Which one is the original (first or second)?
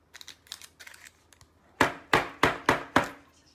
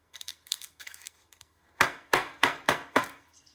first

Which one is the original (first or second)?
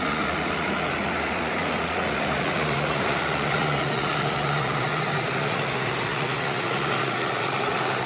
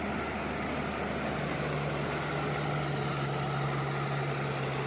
second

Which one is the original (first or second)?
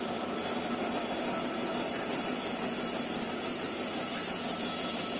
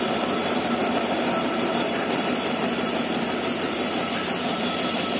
first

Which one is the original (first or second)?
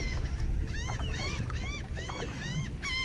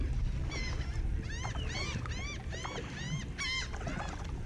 second